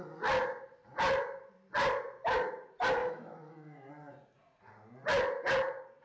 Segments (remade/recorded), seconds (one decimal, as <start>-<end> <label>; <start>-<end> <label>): 0.0-3.0 recorded; 3.0-3.9 remade; 3.9-6.0 recorded